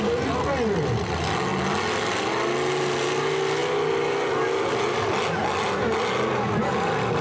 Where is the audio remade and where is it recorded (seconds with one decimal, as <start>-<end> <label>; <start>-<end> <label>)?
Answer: 0.0-7.2 recorded